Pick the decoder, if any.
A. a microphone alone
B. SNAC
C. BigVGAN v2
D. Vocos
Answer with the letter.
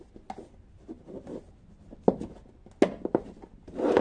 A